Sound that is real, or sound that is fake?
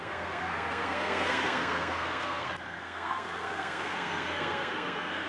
fake